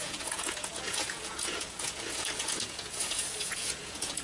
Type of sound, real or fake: fake